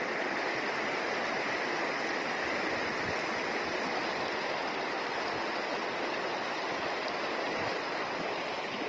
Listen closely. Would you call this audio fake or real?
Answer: real